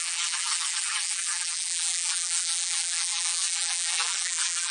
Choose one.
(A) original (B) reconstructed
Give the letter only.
B